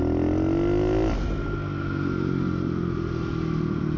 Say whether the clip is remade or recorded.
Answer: recorded